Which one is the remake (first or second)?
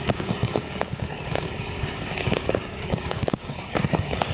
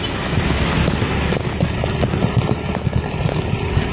first